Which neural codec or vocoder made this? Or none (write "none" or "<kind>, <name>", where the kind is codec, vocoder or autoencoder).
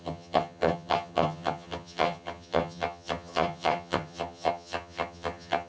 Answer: vocoder, HiFi-GAN